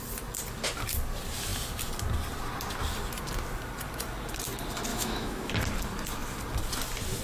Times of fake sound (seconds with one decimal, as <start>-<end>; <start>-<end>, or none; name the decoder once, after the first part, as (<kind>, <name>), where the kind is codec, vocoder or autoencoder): 4.9-5.5 (autoencoder, DAC-VAE)